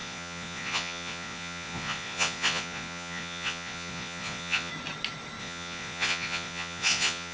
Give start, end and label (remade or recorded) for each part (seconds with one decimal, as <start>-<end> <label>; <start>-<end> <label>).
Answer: 0.0-4.7 remade; 4.7-5.4 recorded; 5.4-7.3 remade